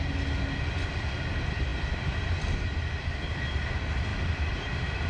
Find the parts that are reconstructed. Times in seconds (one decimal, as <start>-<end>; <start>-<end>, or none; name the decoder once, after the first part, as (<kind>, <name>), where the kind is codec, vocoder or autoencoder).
none